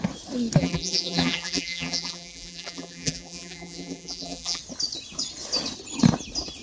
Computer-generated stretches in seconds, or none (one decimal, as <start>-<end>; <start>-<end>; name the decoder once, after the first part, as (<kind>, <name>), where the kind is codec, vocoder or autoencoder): 0.6-4.6 (vocoder, BigVGAN v2)